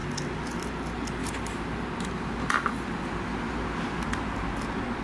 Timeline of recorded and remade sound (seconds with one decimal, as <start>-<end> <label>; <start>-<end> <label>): 0.0-5.0 recorded